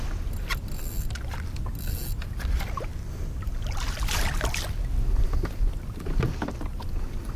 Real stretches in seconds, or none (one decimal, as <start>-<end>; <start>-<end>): 0.0-7.4